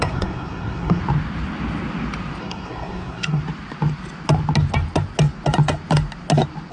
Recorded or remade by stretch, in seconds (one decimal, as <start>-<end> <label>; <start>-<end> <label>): 0.0-1.0 remade; 1.0-2.4 recorded; 2.4-3.4 remade; 3.4-6.7 recorded